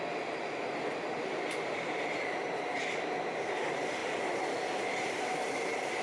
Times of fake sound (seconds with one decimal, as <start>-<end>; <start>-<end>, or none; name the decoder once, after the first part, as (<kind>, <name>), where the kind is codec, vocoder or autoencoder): none